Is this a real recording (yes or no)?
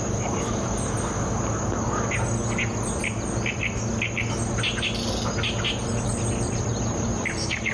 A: yes